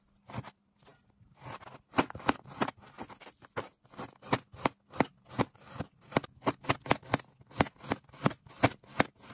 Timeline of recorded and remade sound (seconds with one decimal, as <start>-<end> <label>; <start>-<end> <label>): 0.0-9.3 recorded